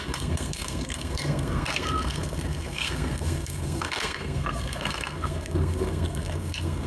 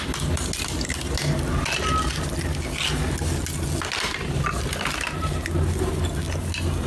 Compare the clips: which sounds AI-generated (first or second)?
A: first